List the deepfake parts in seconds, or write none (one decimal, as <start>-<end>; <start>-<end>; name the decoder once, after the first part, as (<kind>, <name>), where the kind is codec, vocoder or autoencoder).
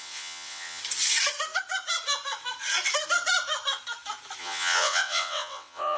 0.0-0.8 (vocoder, WaveNeXt); 4.4-6.0